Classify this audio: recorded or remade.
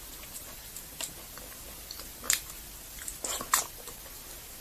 recorded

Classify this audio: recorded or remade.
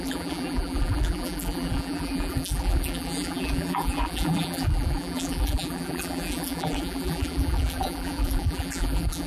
remade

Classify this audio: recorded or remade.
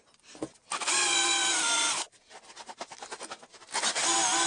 recorded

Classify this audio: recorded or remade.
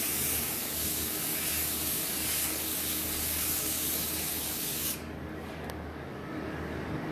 remade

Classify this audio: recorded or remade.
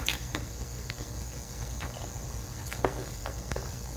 remade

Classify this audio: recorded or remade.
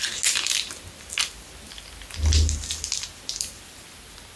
recorded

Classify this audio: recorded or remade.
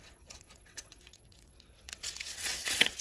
remade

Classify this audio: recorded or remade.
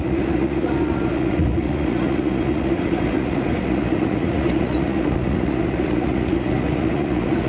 remade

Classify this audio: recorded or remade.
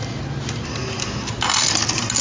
recorded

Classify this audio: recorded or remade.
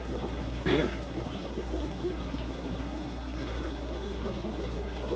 remade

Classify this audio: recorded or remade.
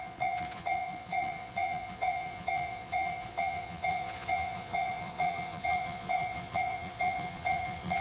remade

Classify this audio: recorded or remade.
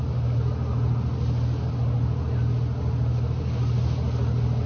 recorded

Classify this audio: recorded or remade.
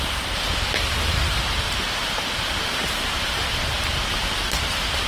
recorded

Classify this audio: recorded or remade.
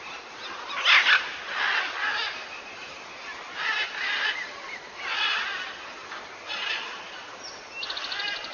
recorded